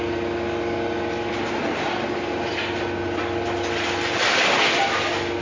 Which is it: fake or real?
real